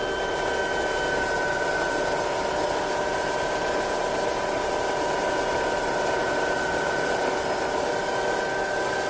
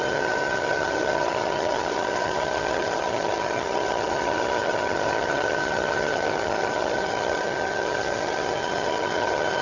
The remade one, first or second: second